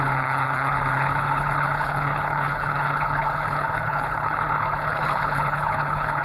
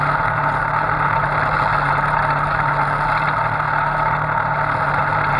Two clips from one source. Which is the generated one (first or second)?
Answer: first